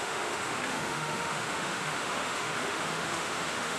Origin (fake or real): fake